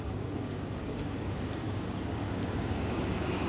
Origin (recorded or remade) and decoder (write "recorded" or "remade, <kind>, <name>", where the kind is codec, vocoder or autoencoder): remade, codec, DAC